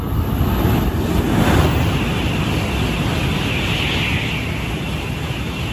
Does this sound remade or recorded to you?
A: recorded